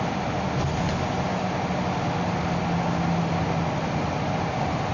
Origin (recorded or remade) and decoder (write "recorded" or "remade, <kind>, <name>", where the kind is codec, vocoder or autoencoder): recorded